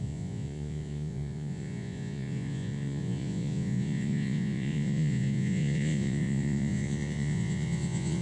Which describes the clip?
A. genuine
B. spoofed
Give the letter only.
B